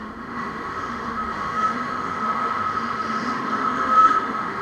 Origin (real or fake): fake